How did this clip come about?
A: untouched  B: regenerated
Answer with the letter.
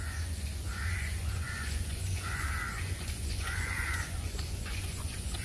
B